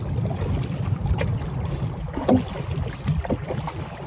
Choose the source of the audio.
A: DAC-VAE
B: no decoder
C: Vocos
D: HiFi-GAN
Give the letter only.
B